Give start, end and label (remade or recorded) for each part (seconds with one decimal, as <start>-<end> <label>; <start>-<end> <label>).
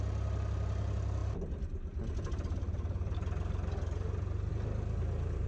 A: 0.0-5.5 recorded